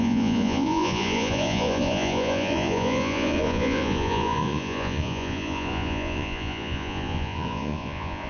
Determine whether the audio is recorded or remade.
remade